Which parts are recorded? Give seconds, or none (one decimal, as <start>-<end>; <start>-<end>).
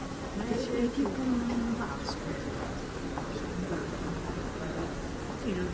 0.9-3.8; 4.6-5.7